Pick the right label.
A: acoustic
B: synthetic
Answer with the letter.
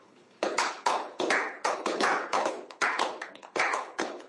B